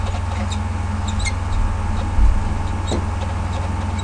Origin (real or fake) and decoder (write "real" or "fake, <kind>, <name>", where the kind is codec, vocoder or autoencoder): real